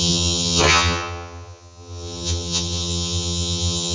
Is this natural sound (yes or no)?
no